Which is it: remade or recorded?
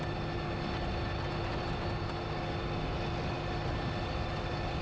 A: recorded